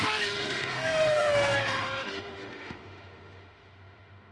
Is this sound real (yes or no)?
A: no